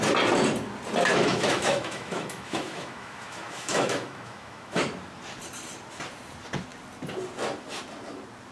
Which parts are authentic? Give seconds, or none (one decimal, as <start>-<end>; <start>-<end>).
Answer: 0.0-1.1; 4.8-8.5